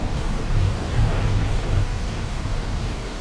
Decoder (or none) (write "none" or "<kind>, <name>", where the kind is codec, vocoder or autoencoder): codec, DAC